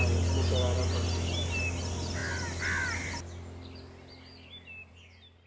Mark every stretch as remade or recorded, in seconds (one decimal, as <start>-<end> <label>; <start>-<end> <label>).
0.0-5.5 recorded